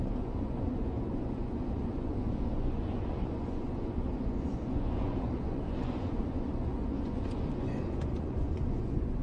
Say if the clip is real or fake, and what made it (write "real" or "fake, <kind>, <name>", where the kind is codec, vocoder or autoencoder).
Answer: fake, vocoder, Vocos